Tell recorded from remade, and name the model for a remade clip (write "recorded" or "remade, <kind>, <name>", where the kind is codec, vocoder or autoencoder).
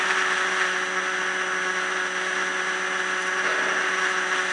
recorded